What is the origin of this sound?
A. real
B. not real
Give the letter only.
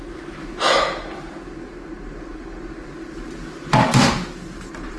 A